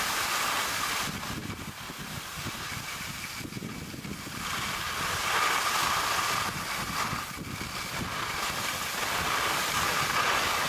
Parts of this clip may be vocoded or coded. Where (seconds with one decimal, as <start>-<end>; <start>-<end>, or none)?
none

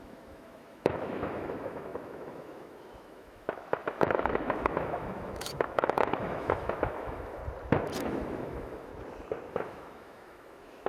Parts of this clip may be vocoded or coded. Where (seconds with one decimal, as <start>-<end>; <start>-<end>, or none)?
0.0-7.4; 8.0-8.9; 9.5-10.9

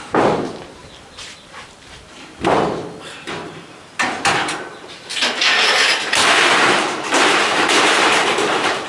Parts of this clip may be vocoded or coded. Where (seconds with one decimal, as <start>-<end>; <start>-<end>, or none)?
0.0-5.1; 6.4-8.9

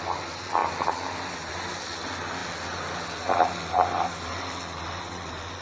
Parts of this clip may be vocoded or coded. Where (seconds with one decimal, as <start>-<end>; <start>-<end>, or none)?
none

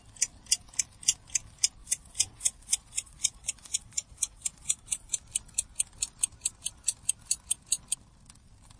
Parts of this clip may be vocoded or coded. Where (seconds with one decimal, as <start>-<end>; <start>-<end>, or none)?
1.8-5.1

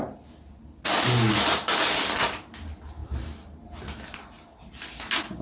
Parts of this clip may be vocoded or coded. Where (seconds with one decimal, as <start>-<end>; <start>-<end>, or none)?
none

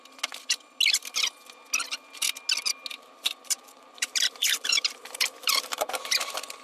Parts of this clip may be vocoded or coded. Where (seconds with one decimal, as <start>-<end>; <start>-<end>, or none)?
2.9-5.9

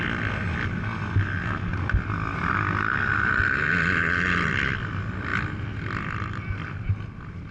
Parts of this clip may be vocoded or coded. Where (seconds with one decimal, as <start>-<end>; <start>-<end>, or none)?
none